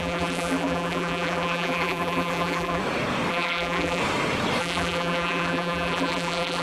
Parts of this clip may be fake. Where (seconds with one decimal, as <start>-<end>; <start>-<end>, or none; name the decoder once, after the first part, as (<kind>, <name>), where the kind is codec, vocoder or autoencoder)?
0.0-2.8 (vocoder, BigVGAN v2); 3.3-4.0; 4.6-6.6